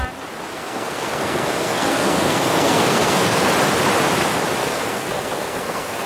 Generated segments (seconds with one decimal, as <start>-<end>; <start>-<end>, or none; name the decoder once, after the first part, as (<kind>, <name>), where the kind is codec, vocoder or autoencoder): 0.5-3.5 (codec, SNAC); 4.6-6.1

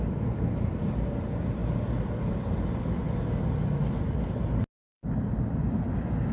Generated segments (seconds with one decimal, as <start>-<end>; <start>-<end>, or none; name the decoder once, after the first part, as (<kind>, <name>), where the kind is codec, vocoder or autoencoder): none

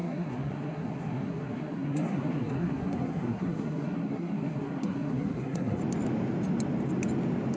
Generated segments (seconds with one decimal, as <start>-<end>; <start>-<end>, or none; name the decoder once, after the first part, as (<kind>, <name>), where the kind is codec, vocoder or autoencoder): 0.0-5.8 (codec, SNAC)

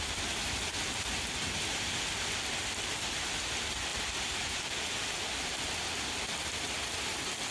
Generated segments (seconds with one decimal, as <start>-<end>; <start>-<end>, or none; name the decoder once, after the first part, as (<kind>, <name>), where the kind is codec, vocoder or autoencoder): 3.9-6.5 (vocoder, BigVGAN v2)

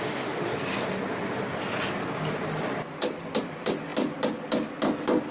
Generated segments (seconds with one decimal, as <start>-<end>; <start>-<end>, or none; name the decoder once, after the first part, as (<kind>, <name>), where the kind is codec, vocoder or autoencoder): none

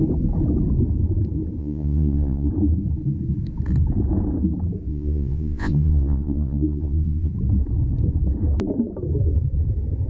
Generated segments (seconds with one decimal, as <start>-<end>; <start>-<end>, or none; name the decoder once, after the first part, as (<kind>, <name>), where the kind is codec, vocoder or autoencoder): 1.6-2.5 (vocoder, Vocos); 4.9-7.3